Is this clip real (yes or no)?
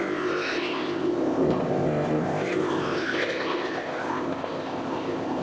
no